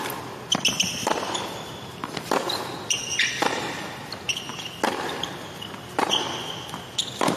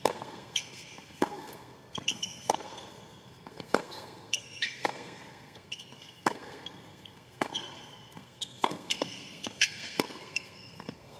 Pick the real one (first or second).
first